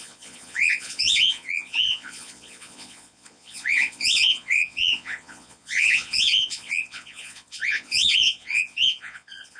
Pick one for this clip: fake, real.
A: fake